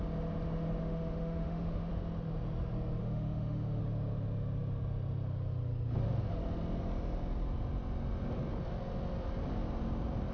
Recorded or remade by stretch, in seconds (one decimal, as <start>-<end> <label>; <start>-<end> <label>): 0.0-0.8 recorded; 0.8-1.9 remade; 1.9-3.0 recorded; 3.0-3.8 remade; 3.8-10.3 recorded